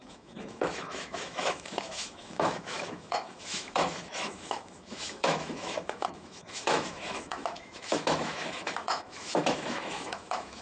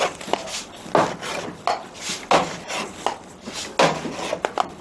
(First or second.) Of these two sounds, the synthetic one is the first